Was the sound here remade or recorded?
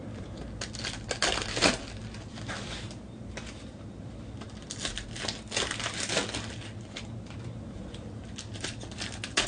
recorded